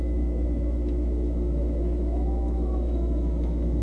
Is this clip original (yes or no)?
no